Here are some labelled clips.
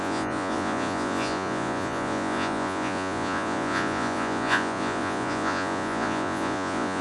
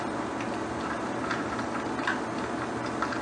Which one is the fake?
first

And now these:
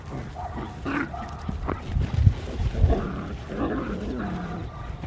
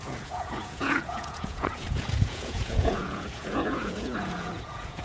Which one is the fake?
second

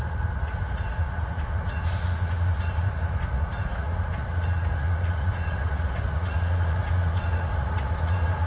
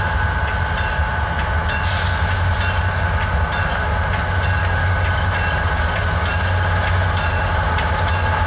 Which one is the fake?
first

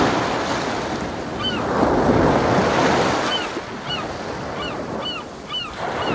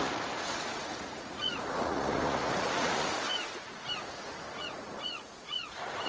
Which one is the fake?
second